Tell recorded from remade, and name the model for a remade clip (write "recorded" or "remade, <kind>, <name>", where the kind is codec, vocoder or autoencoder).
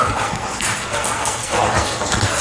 remade, codec, SNAC